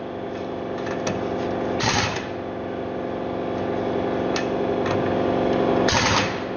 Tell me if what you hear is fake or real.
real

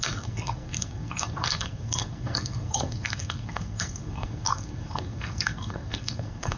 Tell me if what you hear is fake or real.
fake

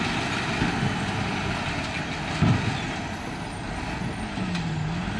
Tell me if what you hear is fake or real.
real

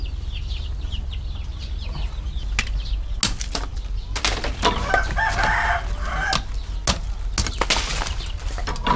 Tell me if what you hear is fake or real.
real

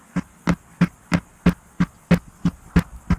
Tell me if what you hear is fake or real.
real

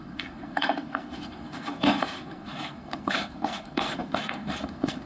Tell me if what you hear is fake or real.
fake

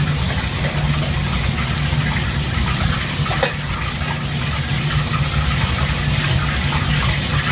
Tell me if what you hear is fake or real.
real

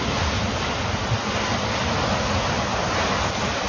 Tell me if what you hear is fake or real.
real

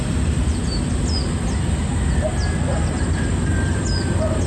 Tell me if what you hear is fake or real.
real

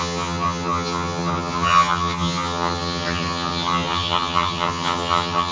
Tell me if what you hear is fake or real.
fake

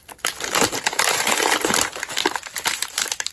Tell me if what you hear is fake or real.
real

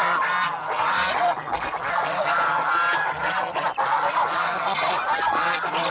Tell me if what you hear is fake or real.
real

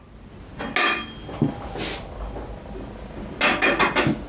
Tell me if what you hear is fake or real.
real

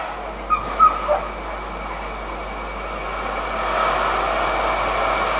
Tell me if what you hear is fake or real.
real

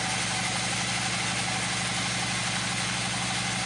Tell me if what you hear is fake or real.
real